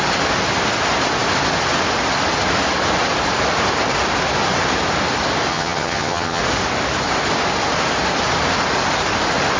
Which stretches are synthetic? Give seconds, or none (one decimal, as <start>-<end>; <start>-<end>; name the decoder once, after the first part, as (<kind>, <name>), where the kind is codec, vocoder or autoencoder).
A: 5.5-6.4 (vocoder, HiFi-GAN)